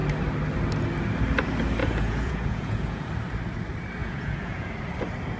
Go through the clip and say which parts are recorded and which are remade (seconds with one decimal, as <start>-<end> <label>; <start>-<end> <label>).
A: 0.0-1.8 recorded; 1.8-3.1 remade; 3.1-4.0 recorded; 4.0-4.7 remade; 4.7-5.4 recorded